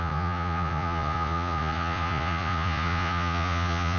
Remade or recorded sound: remade